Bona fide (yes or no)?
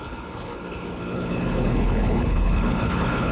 no